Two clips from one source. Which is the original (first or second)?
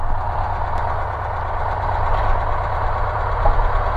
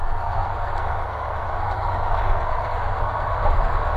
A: first